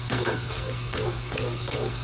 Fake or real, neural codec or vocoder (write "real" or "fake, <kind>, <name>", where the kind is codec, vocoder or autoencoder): fake, codec, SNAC